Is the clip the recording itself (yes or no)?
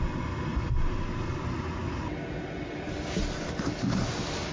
yes